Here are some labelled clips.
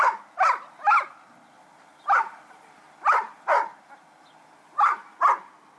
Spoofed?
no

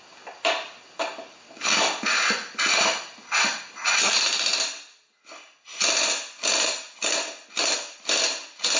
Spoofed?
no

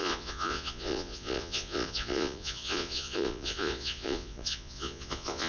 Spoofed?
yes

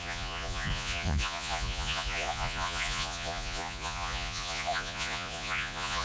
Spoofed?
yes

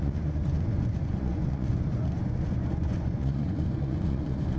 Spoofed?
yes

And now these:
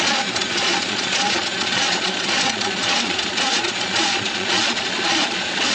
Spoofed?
yes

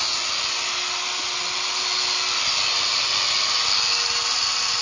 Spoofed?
no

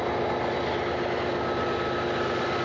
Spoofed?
no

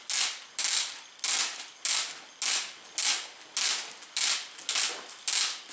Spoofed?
no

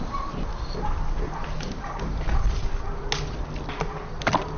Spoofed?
no